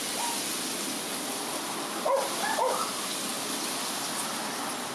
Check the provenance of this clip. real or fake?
real